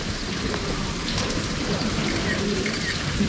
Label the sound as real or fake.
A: fake